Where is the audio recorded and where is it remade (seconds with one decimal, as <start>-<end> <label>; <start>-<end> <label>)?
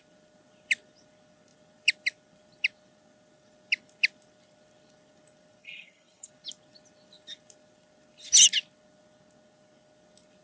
0.0-5.6 recorded; 5.6-6.3 remade; 6.3-10.4 recorded